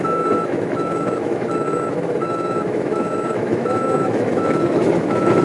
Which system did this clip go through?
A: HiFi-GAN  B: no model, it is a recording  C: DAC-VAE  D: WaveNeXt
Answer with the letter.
C